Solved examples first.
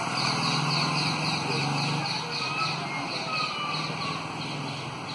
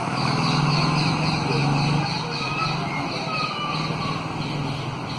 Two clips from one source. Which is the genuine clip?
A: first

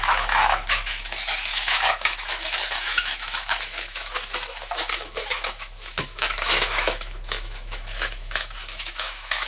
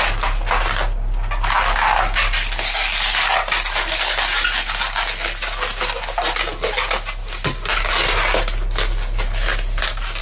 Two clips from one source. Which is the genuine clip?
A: second